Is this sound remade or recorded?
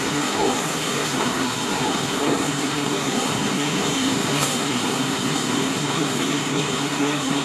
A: remade